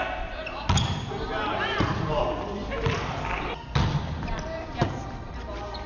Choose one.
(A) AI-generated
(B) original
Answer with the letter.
B